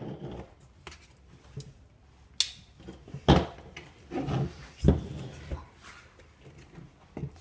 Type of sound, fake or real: real